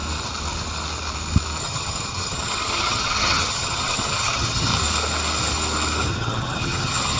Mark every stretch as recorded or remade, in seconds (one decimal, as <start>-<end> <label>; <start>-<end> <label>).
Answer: 0.0-1.6 recorded; 1.6-4.7 remade; 4.7-6.1 recorded; 6.1-7.2 remade